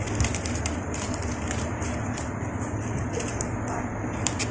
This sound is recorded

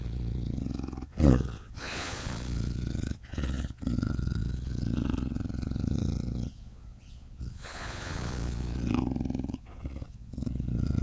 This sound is remade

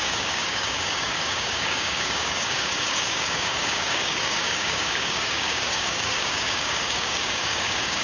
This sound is remade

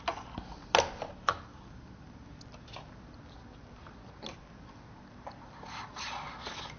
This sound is recorded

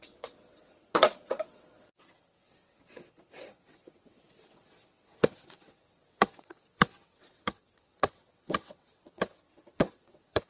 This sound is remade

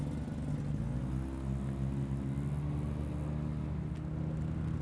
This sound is recorded